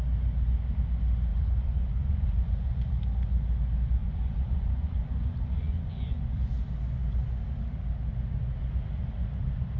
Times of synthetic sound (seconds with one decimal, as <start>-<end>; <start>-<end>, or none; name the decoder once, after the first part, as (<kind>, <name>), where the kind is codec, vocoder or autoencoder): 1.3-2.9 (vocoder, Vocos); 4.0-6.2